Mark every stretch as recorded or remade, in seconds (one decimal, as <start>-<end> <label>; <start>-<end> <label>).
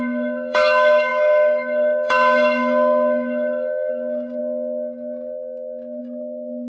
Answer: 0.0-4.4 remade; 4.4-6.0 recorded; 6.0-6.7 remade